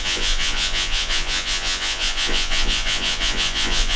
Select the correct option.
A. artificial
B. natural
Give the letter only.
A